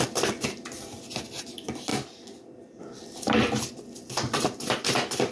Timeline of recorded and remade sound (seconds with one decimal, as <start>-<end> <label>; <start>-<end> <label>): 0.0-5.3 remade